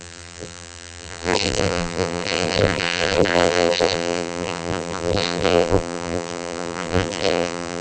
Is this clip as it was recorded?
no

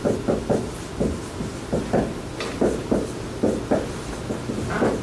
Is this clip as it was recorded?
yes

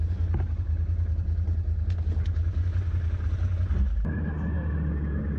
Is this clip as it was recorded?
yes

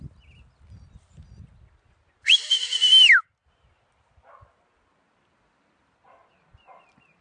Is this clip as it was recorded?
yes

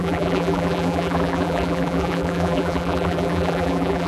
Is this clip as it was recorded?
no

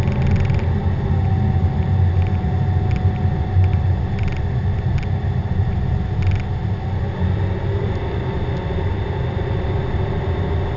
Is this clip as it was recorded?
yes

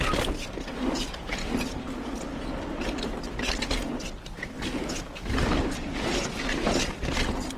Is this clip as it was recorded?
yes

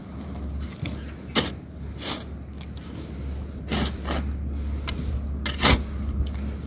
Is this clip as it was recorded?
yes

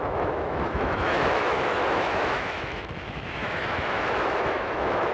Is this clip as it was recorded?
no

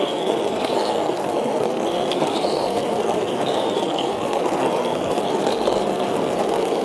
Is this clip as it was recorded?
no